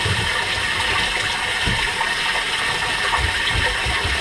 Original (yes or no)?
yes